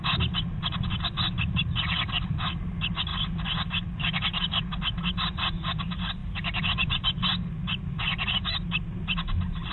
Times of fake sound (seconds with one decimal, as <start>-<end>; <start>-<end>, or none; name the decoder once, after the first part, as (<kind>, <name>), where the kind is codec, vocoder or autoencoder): none